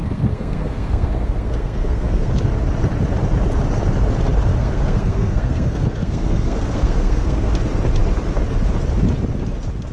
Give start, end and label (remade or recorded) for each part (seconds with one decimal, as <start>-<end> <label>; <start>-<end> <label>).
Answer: 0.0-2.3 remade; 2.3-4.5 recorded; 4.5-7.5 remade; 7.5-9.9 recorded